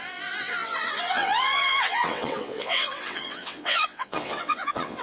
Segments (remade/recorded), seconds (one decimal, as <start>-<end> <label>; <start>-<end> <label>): 0.0-5.0 remade